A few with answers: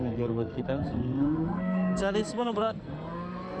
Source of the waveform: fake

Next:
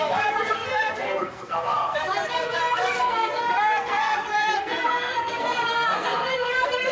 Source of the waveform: fake